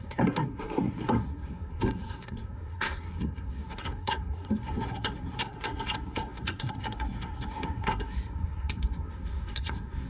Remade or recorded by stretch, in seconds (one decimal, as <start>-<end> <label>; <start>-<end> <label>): 0.0-10.1 remade